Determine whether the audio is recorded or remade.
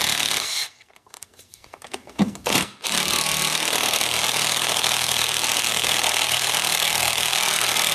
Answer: remade